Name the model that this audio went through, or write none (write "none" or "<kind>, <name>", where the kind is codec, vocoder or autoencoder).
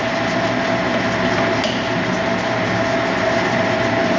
none